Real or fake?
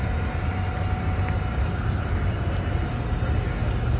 real